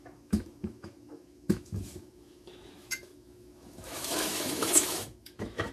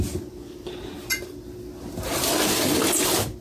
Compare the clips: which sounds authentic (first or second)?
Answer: second